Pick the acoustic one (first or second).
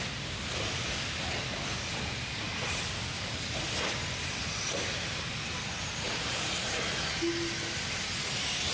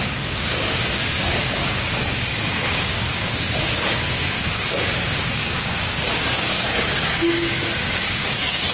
first